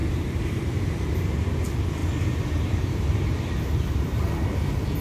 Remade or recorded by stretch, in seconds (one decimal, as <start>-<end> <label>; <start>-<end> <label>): 0.0-1.4 remade; 1.4-2.0 recorded; 2.0-4.3 remade; 4.3-5.0 recorded